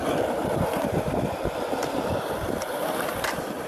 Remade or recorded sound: remade